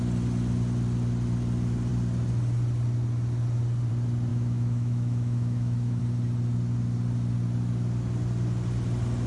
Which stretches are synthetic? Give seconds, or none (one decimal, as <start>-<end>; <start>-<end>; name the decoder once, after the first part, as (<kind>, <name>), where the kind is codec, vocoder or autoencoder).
4.3-6.0 (autoencoder, DAC-VAE)